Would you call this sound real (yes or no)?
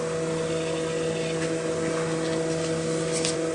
yes